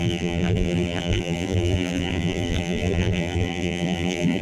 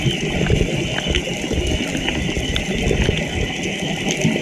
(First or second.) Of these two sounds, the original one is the second